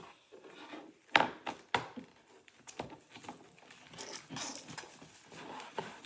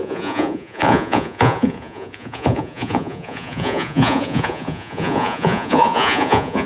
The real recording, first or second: first